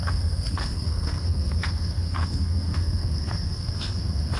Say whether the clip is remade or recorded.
remade